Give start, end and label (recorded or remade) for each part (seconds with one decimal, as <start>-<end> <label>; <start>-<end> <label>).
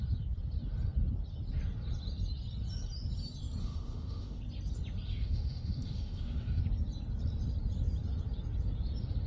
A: 0.0-3.6 recorded; 3.6-4.4 remade; 4.4-5.1 recorded; 5.1-6.6 remade; 6.6-9.3 recorded